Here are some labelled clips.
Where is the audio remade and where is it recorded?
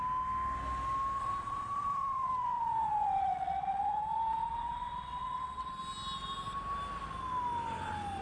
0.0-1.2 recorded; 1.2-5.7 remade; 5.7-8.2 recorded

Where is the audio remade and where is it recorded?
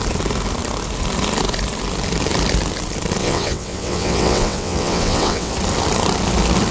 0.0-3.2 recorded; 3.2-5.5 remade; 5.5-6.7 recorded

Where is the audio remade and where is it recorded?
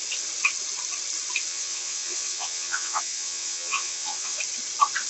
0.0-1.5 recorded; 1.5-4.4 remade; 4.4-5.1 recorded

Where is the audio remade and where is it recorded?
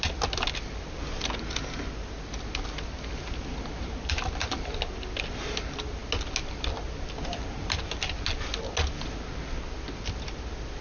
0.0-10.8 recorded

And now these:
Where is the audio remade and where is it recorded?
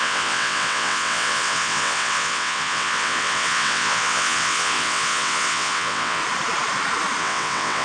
0.0-6.2 remade; 6.2-7.2 recorded; 7.2-7.8 remade